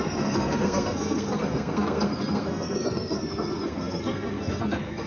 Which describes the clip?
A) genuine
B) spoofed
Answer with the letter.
B